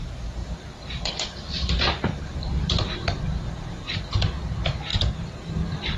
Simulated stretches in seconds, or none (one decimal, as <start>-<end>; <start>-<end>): 0.4-4.0; 4.9-5.5